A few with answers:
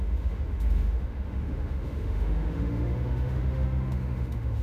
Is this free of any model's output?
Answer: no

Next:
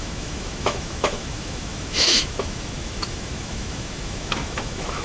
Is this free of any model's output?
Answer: no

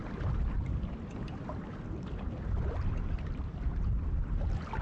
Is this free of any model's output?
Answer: yes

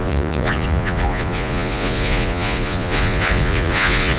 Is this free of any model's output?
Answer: no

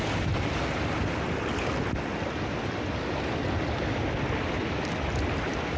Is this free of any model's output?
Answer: yes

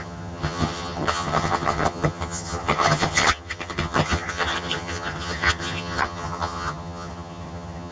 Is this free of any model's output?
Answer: no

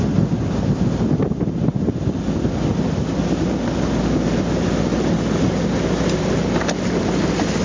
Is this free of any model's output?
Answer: yes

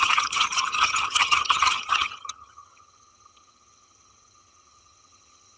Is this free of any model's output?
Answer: no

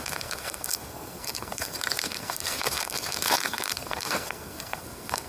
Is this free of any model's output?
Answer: no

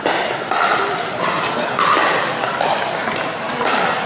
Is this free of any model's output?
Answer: yes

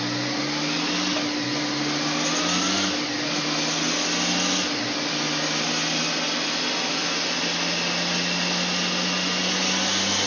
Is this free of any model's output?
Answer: yes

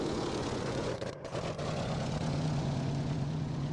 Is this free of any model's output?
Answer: no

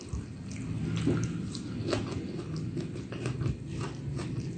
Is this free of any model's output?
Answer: yes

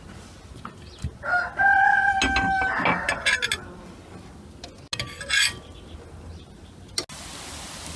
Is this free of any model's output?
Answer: yes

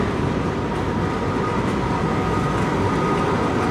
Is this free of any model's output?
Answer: yes